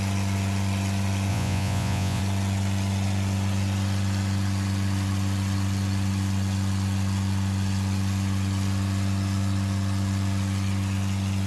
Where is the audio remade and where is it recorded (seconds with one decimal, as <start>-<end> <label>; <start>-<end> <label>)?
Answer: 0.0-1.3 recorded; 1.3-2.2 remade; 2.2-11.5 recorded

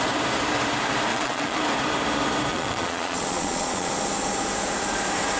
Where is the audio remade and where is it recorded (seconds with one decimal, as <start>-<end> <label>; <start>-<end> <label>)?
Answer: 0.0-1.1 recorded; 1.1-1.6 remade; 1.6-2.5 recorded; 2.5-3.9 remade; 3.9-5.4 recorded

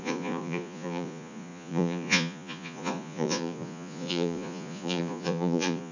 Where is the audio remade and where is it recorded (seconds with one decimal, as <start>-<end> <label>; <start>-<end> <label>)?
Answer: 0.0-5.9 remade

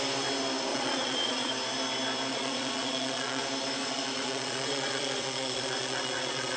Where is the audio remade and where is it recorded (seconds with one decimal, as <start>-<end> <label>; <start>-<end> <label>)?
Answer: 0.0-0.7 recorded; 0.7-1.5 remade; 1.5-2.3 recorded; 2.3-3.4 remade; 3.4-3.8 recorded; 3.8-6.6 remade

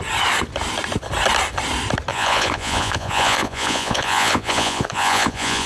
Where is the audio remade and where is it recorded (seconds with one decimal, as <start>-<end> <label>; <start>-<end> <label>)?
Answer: 0.0-2.1 recorded; 2.1-5.7 remade

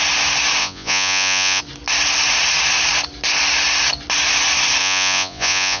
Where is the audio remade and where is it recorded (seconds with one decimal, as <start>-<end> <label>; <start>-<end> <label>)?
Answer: 0.0-0.6 recorded; 0.6-1.6 remade; 1.6-4.8 recorded; 4.8-5.8 remade